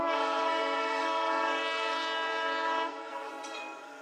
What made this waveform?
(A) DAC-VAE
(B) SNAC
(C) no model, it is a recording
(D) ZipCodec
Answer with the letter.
B